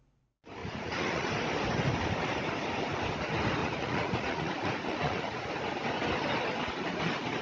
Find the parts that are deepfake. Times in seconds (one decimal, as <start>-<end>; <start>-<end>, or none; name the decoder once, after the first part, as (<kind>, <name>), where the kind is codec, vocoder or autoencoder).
0.6-1.3 (vocoder, Vocos); 3.6-5.5